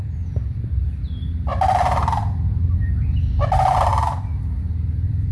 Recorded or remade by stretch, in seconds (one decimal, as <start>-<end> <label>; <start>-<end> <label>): 0.0-5.3 remade